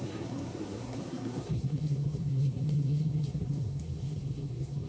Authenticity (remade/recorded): remade